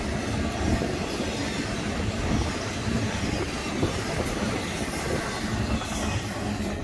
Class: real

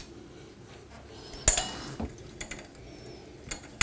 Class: real